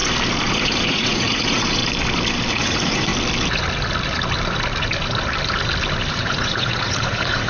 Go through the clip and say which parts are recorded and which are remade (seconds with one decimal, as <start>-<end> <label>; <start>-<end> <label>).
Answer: 0.0-0.5 recorded; 0.5-1.8 remade; 1.8-2.5 recorded; 2.5-3.1 remade; 3.1-6.1 recorded; 6.1-7.5 remade